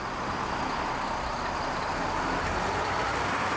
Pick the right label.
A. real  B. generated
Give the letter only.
A